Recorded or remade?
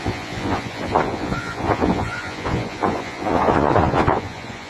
remade